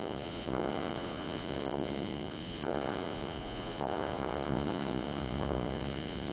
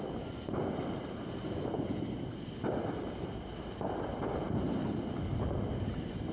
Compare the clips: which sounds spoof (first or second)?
first